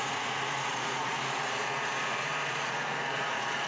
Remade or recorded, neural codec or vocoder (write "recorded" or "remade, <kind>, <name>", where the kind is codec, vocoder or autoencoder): remade, vocoder, Vocos